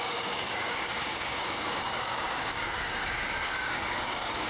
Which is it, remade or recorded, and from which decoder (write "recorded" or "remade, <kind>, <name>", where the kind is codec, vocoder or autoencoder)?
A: remade, codec, DAC